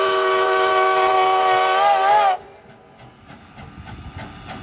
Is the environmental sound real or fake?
real